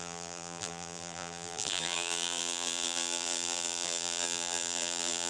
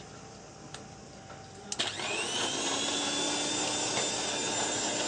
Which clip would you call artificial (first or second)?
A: first